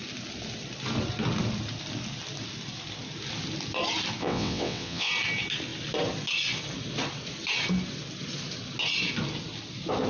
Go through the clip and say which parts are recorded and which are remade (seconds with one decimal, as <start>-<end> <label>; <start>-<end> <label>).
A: 0.0-4.2 recorded; 4.2-5.1 remade; 5.1-10.1 recorded